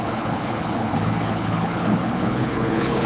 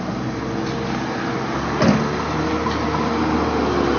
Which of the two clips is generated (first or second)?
first